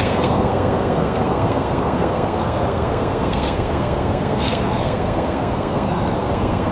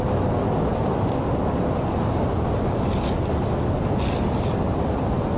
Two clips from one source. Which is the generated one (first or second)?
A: first